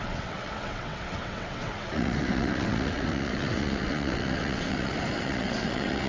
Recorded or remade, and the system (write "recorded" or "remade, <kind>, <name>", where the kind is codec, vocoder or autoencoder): remade, vocoder, WaveNeXt